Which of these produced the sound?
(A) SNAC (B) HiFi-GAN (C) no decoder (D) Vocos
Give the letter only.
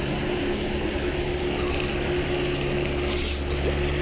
C